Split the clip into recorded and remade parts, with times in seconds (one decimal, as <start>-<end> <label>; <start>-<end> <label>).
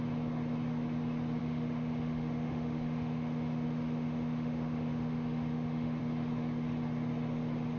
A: 0.0-1.4 recorded; 1.4-6.0 remade; 6.0-7.8 recorded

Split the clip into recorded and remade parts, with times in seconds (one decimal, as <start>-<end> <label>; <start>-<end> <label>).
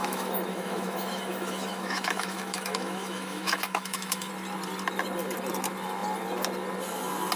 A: 0.0-4.3 remade; 4.3-7.4 recorded